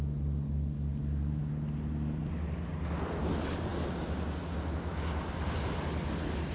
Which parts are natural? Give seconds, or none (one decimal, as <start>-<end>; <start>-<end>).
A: 0.0-6.5